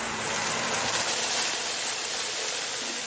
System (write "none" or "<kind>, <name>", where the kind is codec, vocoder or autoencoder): none